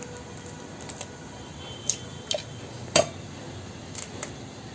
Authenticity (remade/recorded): recorded